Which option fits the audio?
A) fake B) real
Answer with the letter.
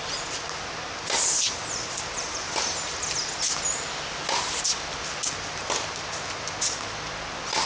B